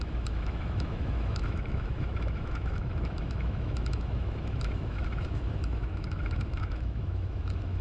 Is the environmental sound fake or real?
fake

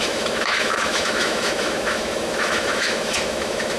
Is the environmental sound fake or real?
fake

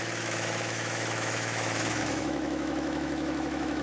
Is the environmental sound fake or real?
fake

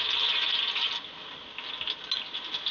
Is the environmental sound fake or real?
real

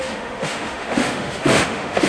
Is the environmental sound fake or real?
fake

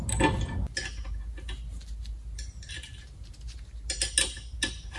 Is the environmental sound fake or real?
real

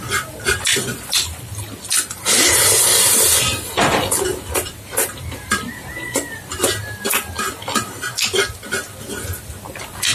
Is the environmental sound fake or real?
real